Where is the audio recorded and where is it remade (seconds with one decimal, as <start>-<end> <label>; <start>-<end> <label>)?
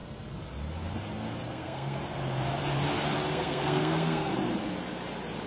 0.0-1.5 recorded; 1.5-2.0 remade; 2.0-3.3 recorded; 3.3-4.3 remade; 4.3-5.5 recorded